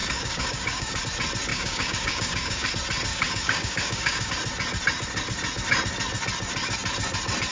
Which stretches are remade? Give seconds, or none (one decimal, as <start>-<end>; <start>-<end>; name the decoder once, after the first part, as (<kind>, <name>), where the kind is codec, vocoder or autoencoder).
0.0-1.0 (codec, DAC); 1.5-2.7; 3.1-4.3